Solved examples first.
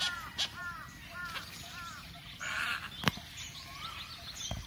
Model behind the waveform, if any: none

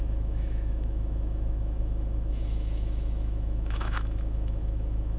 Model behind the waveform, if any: autoencoder, DAC-VAE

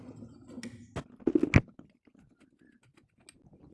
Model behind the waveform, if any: none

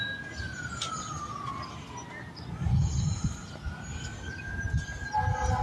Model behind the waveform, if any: none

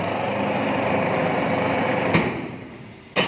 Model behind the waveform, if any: none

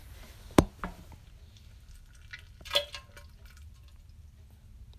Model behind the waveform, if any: none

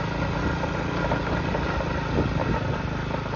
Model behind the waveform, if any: none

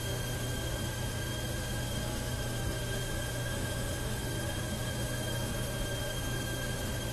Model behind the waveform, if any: autoencoder, DAC-VAE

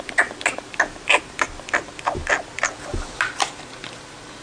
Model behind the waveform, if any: none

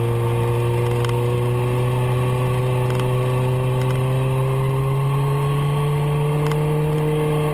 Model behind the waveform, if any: none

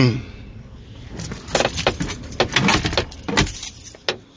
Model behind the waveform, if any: none